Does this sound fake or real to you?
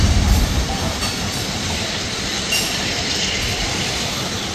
fake